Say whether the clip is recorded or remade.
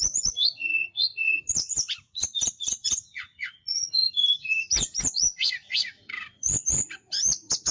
remade